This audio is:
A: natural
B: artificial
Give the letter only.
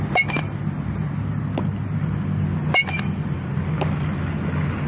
A